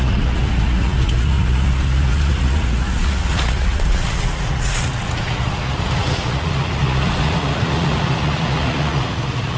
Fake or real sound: fake